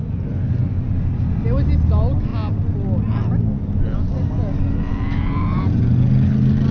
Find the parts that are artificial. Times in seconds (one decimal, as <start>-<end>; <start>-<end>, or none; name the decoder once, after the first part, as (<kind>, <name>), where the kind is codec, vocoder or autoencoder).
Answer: none